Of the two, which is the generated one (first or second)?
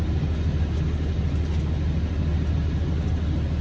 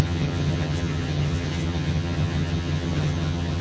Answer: second